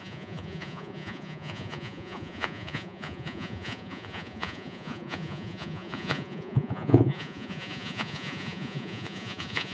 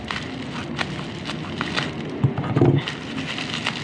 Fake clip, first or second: first